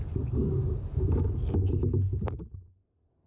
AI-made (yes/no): yes